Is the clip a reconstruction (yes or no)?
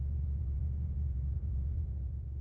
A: yes